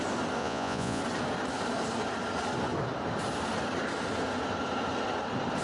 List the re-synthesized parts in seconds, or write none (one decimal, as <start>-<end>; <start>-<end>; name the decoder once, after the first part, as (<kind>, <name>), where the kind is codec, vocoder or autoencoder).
0.4-1.0 (vocoder, Vocos)